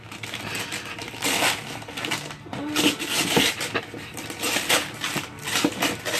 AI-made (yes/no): no